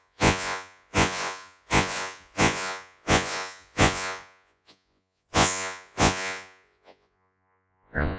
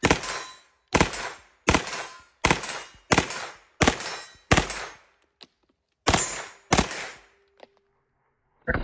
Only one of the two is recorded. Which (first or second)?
second